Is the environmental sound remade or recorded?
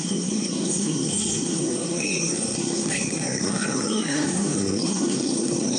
remade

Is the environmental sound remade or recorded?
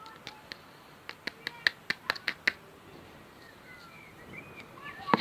recorded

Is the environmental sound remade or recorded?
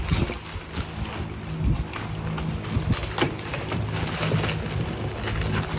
recorded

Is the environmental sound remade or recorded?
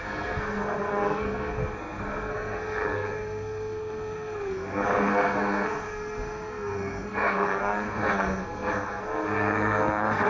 remade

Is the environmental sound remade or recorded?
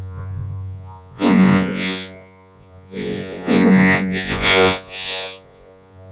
remade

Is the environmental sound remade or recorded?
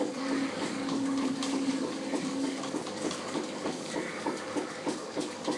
remade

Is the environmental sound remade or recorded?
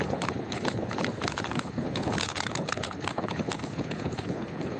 remade